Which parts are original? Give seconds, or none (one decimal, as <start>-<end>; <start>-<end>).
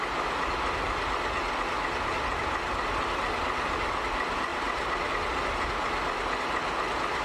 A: 0.0-4.5; 5.1-7.2